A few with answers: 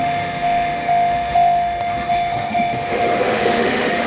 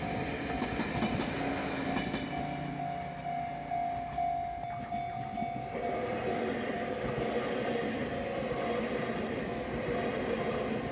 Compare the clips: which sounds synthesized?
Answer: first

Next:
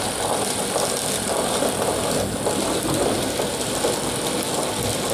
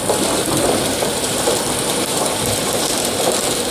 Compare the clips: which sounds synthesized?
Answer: second